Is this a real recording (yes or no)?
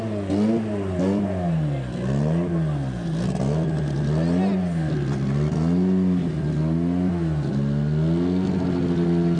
yes